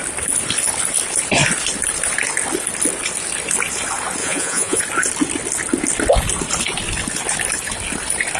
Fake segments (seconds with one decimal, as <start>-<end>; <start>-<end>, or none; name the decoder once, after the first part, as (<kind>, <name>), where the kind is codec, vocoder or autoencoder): 4.2-4.8 (vocoder, Vocos)